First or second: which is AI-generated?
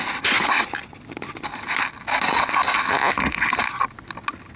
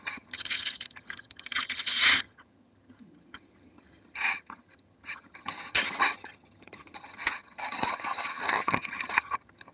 second